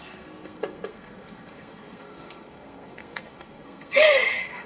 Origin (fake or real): fake